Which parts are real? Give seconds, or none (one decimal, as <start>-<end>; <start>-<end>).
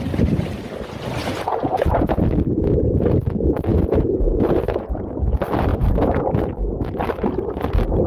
0.0-1.2; 2.2-3.7; 5.1-5.7; 6.3-8.1